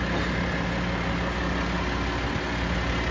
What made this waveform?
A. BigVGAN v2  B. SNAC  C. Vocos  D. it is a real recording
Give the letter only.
D